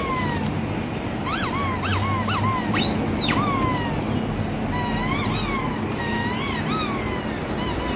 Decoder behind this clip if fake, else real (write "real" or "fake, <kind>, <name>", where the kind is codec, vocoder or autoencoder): real